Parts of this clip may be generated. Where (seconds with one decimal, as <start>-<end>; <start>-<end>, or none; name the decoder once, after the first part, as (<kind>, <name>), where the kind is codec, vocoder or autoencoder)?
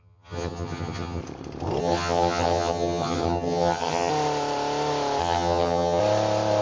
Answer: 0.0-1.2 (vocoder, HiFi-GAN); 1.8-4.1; 5.2-6.0